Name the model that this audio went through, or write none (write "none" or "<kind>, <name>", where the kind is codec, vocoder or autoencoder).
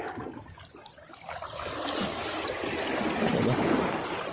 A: none